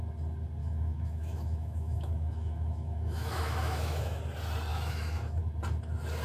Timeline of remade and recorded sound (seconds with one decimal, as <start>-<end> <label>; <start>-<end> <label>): 0.0-0.6 recorded; 0.6-4.2 remade; 4.2-4.7 recorded; 4.7-5.4 remade; 5.4-6.2 recorded